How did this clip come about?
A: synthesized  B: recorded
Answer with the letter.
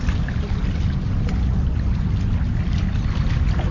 B